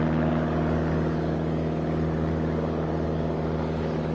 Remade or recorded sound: remade